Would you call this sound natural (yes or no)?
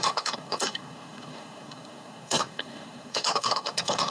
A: no